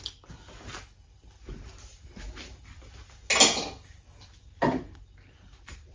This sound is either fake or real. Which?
real